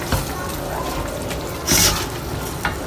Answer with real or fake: real